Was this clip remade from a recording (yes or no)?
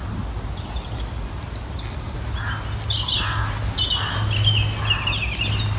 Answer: no